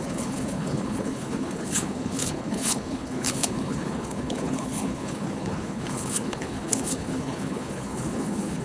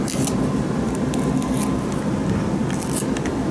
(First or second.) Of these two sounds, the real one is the second